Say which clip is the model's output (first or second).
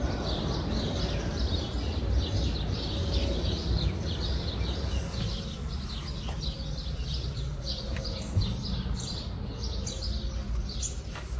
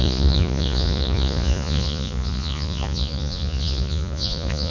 second